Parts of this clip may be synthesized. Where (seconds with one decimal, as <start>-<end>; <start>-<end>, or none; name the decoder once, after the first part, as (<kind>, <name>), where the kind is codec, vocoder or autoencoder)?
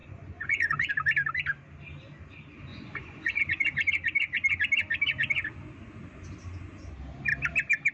0.0-0.9 (vocoder, Vocos); 2.7-3.4